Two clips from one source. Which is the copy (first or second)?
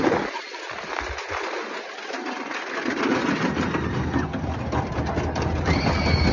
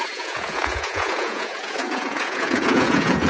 second